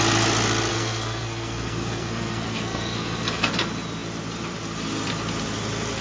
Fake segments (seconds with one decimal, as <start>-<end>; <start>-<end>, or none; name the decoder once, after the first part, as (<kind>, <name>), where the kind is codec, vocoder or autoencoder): 0.7-3.5 (codec, SNAC)